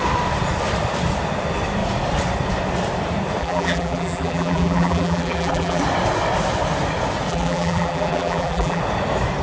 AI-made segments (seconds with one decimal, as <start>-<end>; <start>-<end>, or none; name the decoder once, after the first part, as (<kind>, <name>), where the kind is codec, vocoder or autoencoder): 3.4-5.8 (vocoder, BigVGAN v2); 7.3-8.8